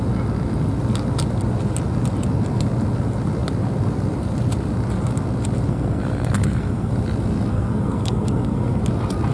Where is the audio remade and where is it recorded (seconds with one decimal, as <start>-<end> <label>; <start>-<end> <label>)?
0.0-5.7 recorded; 5.7-6.9 remade; 6.9-7.5 recorded; 7.5-8.8 remade; 8.8-9.3 recorded